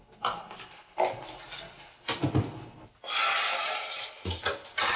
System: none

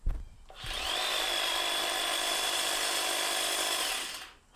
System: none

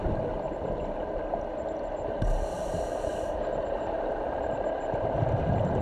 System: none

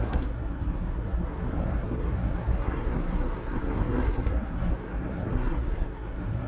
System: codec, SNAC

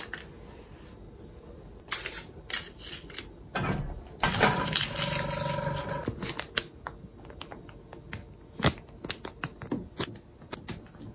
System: none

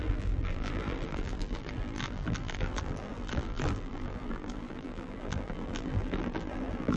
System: vocoder, BigVGAN v2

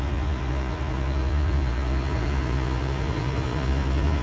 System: vocoder, Vocos